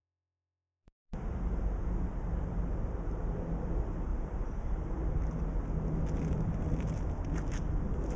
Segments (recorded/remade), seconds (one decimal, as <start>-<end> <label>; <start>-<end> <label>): 0.0-4.1 recorded; 4.1-5.4 remade; 5.4-8.2 recorded